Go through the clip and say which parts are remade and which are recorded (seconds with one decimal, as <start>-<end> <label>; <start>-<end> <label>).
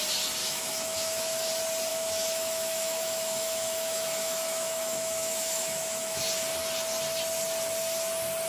0.0-0.4 recorded; 0.4-1.5 remade; 1.5-1.9 recorded; 1.9-6.2 remade; 6.2-8.5 recorded